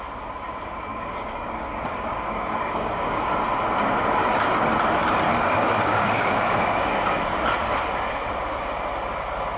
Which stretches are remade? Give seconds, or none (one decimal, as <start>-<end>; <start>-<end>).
0.9-3.3; 5.3-7.0